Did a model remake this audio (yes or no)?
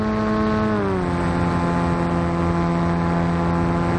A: no